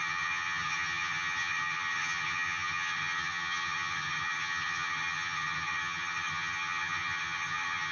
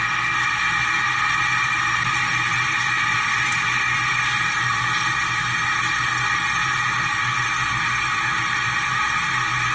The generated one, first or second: first